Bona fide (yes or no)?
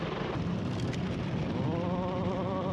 yes